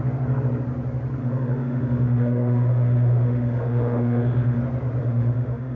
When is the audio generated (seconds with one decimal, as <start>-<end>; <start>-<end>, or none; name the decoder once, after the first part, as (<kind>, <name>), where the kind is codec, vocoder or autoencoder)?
1.2-4.6 (autoencoder, DAC-VAE); 5.0-5.8